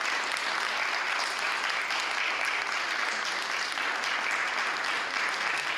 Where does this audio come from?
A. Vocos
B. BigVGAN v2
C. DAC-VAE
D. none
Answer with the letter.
D